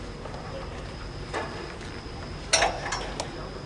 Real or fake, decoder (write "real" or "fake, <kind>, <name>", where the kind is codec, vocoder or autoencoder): real